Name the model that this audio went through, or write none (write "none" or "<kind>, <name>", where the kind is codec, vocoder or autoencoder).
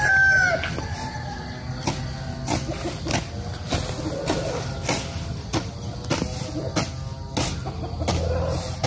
none